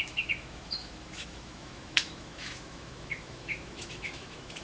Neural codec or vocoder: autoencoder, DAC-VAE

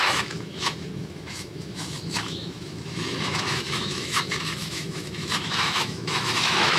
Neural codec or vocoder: autoencoder, DAC-VAE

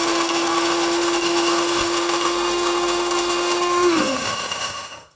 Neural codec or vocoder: autoencoder, DAC-VAE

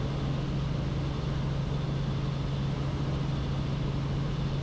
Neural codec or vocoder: none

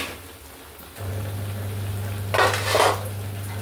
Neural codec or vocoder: none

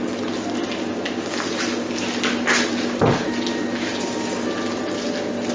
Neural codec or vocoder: none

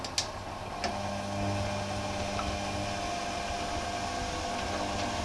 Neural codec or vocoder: none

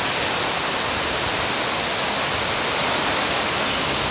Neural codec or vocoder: none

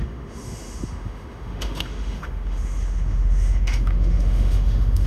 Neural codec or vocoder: autoencoder, DAC-VAE